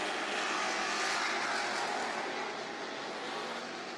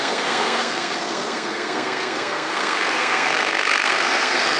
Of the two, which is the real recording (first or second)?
first